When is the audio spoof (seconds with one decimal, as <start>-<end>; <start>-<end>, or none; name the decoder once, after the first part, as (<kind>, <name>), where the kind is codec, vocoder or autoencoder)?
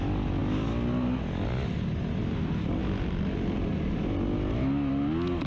2.8-3.7 (vocoder, BigVGAN v2)